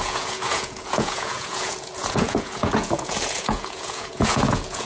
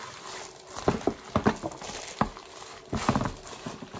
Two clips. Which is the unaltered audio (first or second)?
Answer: second